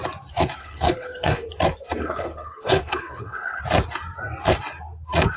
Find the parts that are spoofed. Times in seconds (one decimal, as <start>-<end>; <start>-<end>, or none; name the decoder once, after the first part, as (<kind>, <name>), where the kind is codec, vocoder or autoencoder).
0.6-1.5 (codec, HILCodec); 2.0-3.6